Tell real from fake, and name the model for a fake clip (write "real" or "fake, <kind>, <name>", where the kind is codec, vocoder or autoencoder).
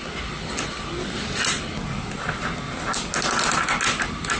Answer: real